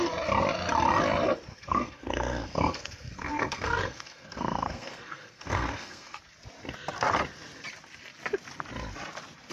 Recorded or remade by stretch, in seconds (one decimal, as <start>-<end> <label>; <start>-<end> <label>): 0.0-1.5 recorded; 1.5-6.2 remade; 6.2-9.5 recorded